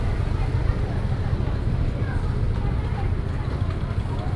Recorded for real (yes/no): yes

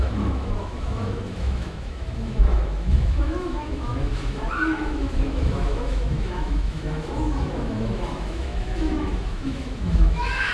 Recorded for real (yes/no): no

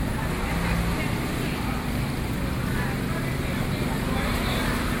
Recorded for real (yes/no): yes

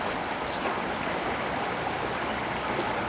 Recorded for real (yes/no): yes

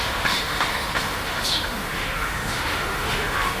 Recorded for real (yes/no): no